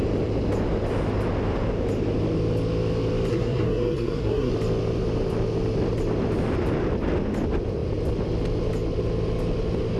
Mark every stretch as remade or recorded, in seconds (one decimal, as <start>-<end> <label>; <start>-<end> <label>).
0.0-3.3 recorded; 3.3-4.5 remade; 4.5-10.0 recorded